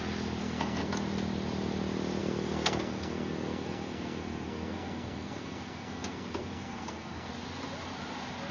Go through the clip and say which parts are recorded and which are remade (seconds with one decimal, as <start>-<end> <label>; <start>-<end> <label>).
0.0-0.4 recorded; 0.4-0.9 remade; 0.9-2.2 recorded; 2.2-7.3 remade; 7.3-8.5 recorded